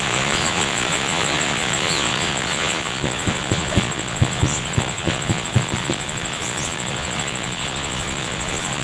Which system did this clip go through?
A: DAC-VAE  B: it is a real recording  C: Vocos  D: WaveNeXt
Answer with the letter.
C